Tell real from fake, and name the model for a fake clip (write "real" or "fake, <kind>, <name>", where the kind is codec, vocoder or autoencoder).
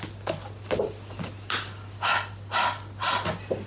real